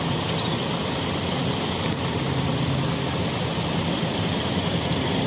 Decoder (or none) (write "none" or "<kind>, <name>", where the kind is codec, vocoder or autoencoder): none